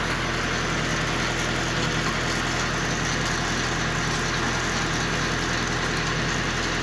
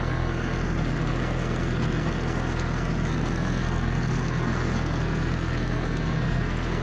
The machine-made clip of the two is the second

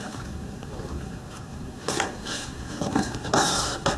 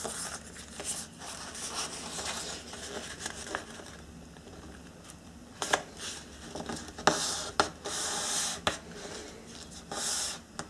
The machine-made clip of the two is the first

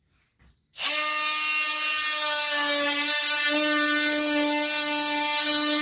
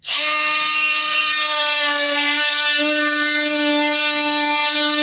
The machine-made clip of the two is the second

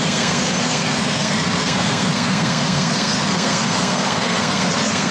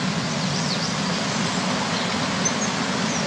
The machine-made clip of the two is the first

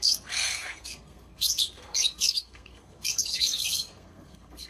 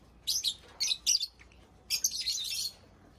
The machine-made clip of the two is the first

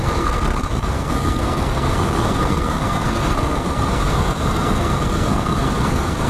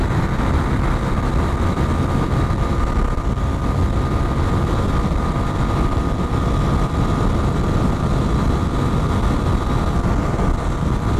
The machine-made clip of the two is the first